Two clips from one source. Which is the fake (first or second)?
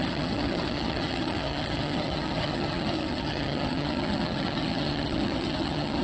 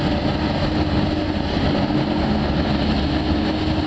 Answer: first